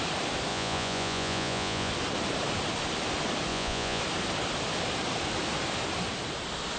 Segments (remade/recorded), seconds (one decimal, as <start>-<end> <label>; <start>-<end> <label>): 0.0-0.5 recorded; 0.5-1.9 remade; 1.9-3.5 recorded; 3.5-4.0 remade; 4.0-6.8 recorded